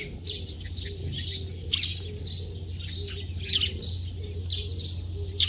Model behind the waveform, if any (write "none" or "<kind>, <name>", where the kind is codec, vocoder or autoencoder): none